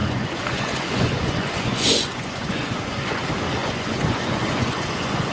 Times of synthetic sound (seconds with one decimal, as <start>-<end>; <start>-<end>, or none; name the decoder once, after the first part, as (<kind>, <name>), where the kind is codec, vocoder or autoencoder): 0.0-3.2 (vocoder, Vocos); 3.6-5.3